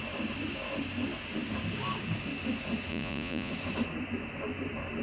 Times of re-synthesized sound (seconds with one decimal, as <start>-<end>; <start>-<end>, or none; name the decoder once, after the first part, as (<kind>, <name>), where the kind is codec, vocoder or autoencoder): 2.9-3.5 (vocoder, Vocos)